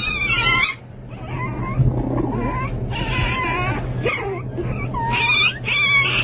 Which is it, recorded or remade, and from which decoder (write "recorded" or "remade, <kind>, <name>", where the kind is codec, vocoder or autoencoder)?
recorded